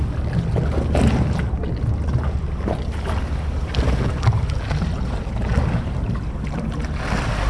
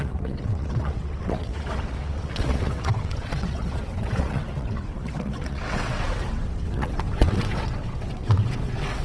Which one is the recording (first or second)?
first